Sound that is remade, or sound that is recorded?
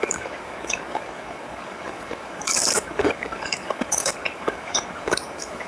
remade